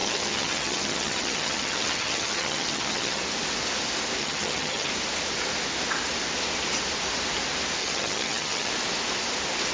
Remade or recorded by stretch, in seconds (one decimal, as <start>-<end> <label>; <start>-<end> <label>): 0.0-3.2 remade; 3.2-4.2 recorded; 4.2-4.9 remade; 4.9-7.8 recorded; 7.8-8.7 remade; 8.7-9.7 recorded